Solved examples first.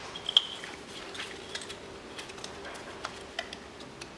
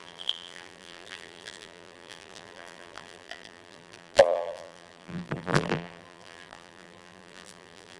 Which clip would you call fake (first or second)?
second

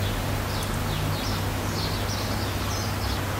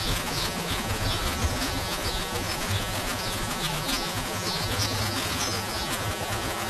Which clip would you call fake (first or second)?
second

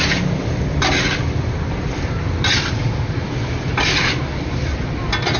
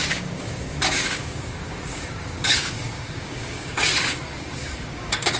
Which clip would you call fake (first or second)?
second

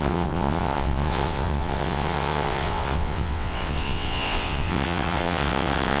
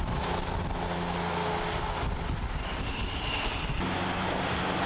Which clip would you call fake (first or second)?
first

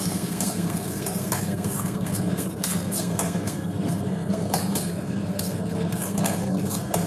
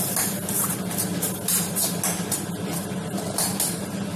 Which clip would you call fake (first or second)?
first